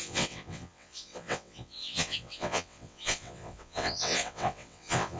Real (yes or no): no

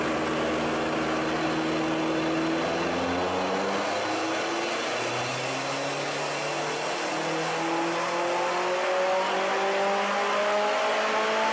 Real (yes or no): yes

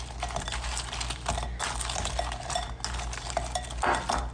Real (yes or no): yes